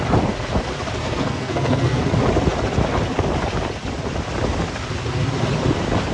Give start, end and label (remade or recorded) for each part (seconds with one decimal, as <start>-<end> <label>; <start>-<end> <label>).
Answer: 0.0-1.0 recorded; 1.0-2.0 remade; 2.0-6.1 recorded